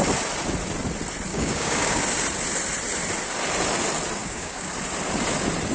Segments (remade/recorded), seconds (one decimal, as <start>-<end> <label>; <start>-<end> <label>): 0.0-1.3 recorded; 1.3-2.0 remade; 2.0-4.2 recorded; 4.2-4.7 remade; 4.7-5.7 recorded